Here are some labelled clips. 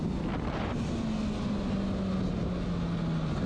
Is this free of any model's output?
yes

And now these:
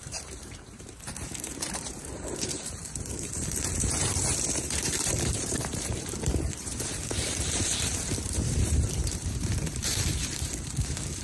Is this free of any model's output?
no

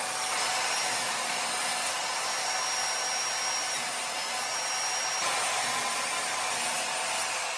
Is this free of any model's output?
yes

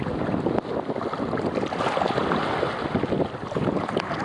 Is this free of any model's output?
yes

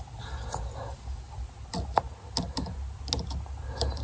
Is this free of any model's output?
yes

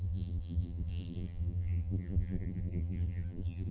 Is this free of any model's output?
no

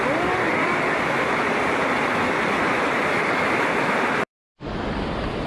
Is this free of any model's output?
no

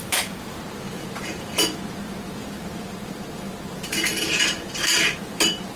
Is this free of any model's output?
no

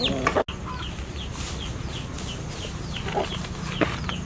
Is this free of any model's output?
yes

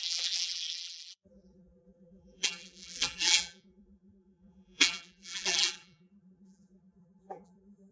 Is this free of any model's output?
no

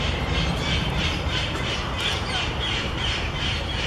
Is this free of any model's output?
no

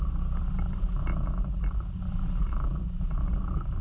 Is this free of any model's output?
yes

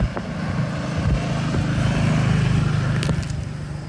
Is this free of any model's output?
yes